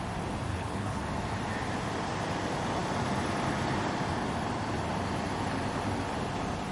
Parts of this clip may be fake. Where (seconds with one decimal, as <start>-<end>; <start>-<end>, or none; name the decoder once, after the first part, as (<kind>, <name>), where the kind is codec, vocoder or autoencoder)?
0.5-1.0 (codec, HILCodec)